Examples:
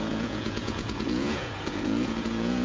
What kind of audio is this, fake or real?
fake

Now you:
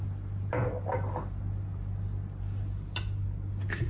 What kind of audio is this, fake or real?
real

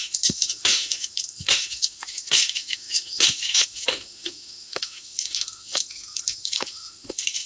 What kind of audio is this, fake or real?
fake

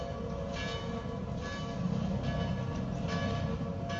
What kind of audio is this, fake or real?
real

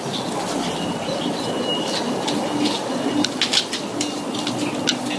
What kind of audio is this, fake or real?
real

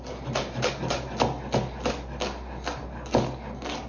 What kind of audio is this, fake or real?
real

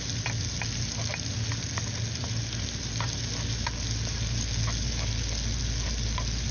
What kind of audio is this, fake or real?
real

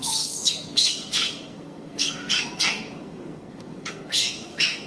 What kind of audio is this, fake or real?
fake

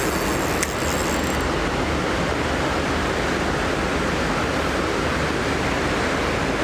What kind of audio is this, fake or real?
real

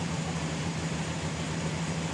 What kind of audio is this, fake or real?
fake